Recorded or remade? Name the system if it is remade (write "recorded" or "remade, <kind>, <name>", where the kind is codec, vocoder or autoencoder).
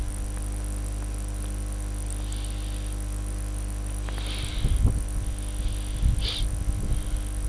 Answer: recorded